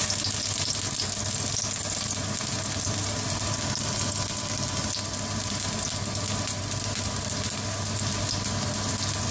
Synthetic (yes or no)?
no